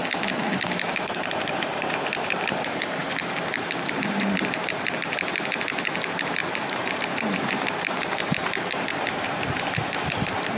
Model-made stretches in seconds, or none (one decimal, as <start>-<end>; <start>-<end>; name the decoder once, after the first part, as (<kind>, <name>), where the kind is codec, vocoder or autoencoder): 0.9-10.6 (vocoder, BigVGAN v2)